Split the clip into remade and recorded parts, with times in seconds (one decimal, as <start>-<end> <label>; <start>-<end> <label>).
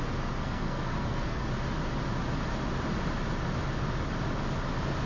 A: 0.0-0.4 recorded; 0.4-1.5 remade; 1.5-5.1 recorded